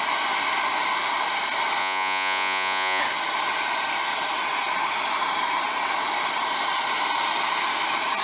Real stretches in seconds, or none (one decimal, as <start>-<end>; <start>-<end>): 0.0-1.8; 3.0-8.2